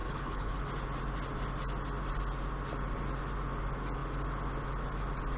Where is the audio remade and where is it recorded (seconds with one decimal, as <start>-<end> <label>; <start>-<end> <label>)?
0.0-0.6 remade; 0.6-5.4 recorded